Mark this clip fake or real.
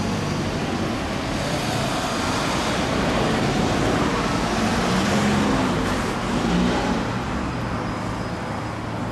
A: real